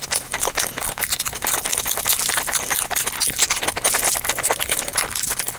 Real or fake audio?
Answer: real